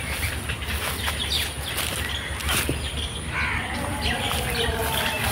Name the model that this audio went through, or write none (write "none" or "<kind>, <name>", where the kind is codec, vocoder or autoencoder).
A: none